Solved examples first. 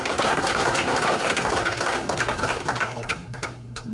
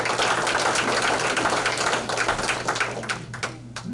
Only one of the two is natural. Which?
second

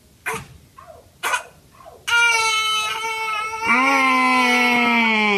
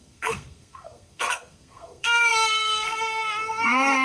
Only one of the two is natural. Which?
first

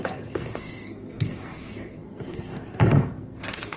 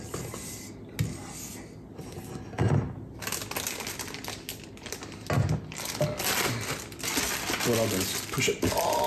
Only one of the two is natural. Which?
second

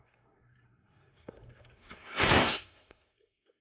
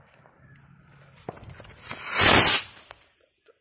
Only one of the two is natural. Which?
second